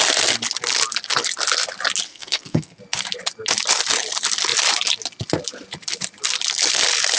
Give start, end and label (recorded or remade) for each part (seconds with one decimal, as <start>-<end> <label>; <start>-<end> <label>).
0.0-2.1 recorded; 2.1-2.8 remade; 2.8-7.2 recorded

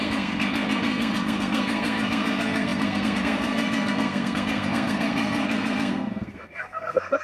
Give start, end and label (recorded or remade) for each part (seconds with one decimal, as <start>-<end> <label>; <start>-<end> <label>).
0.0-7.2 remade

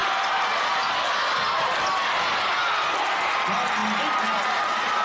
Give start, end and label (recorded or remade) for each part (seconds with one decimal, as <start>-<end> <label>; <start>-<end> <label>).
0.0-5.0 recorded

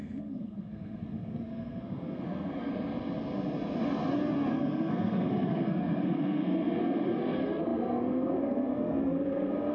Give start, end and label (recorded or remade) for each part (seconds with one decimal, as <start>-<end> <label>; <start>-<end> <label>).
0.0-2.7 remade; 2.7-4.5 recorded; 4.5-9.7 remade